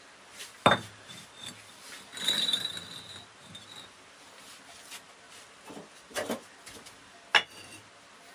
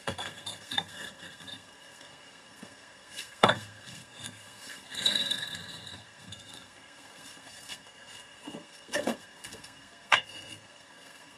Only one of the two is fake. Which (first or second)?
second